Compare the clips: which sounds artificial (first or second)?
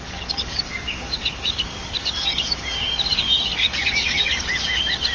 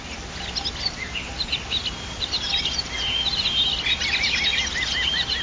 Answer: first